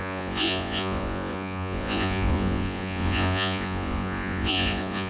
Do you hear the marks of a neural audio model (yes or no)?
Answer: yes